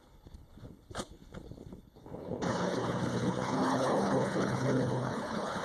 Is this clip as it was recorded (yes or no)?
no